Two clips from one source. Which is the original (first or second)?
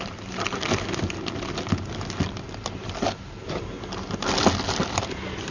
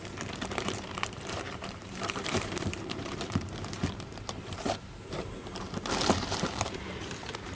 first